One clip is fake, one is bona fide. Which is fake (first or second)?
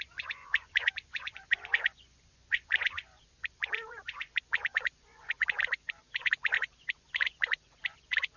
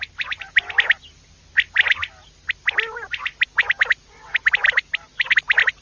first